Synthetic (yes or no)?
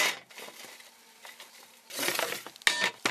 no